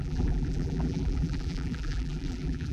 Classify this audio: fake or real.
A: fake